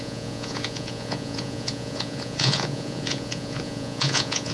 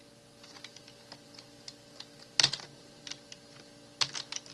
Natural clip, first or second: second